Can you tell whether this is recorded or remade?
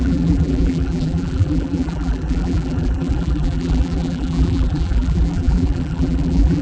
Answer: remade